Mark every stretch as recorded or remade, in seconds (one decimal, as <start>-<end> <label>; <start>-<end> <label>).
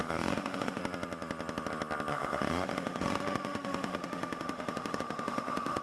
0.0-0.8 remade; 0.8-2.1 recorded; 2.1-5.8 remade